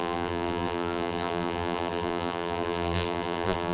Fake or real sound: fake